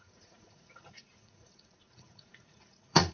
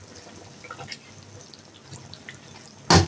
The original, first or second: second